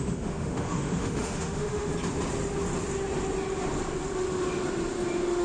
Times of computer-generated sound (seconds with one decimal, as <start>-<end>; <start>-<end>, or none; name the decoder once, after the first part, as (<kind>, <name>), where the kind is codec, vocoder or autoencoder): 0.0-1.9 (autoencoder, DAC-VAE)